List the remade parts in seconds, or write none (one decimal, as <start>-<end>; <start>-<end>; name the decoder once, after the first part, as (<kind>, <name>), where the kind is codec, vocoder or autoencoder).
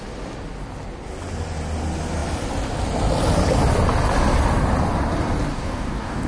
5.5-6.3 (codec, DAC)